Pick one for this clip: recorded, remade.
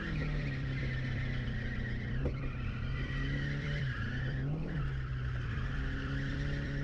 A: remade